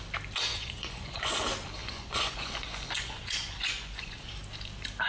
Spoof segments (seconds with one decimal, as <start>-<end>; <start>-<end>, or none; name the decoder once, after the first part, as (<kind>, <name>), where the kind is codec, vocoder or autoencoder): 0.5-1.3 (vocoder, Vocos); 1.8-4.3